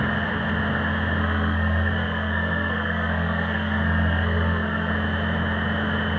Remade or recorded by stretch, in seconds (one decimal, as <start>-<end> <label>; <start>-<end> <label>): 0.0-1.2 recorded; 1.2-4.9 remade; 4.9-6.2 recorded